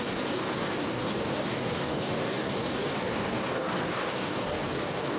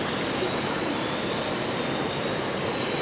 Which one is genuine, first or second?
second